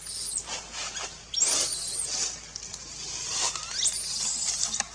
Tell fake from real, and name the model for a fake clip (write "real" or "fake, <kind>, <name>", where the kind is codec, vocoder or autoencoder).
real